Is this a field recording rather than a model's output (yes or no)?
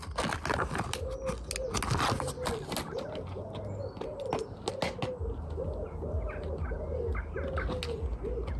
yes